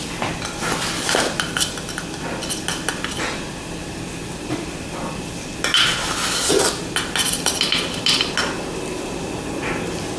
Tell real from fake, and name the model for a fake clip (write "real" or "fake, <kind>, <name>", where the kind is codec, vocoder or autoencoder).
real